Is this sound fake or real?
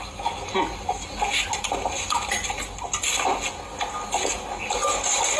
real